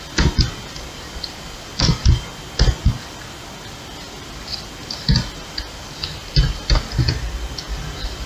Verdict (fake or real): real